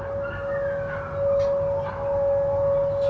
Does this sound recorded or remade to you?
recorded